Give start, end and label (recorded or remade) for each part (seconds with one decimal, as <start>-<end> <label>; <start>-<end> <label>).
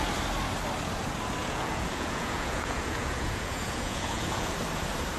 0.0-1.4 recorded; 1.4-4.5 remade; 4.5-5.2 recorded